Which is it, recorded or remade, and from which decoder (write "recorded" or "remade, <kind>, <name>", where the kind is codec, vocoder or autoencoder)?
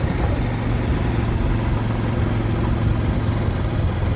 recorded